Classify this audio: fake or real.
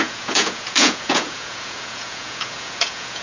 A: fake